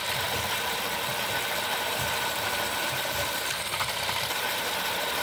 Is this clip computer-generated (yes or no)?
yes